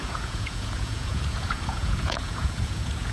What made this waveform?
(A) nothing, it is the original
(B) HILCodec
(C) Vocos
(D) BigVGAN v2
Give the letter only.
C